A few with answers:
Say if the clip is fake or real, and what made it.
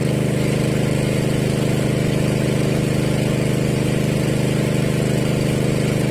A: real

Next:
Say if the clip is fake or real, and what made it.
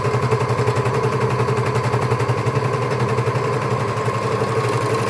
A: real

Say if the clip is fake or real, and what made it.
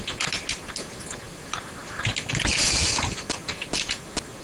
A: real